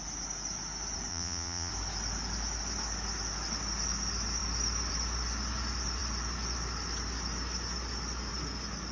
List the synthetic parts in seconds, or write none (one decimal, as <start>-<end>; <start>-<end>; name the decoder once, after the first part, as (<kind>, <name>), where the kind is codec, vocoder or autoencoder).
1.1-1.7 (vocoder, Vocos)